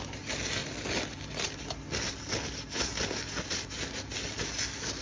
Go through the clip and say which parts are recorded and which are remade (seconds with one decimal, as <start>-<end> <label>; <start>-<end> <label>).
0.0-5.0 recorded